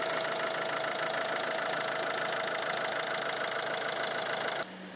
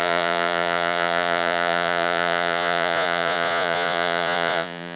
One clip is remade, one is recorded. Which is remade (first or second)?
second